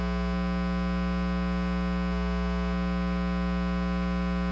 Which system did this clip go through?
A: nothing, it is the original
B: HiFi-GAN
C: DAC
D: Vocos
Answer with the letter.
A